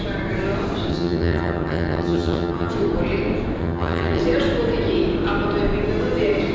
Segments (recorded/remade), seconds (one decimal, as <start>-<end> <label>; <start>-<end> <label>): 0.0-0.9 recorded; 0.9-2.7 remade; 2.7-3.6 recorded; 3.6-4.2 remade; 4.2-6.5 recorded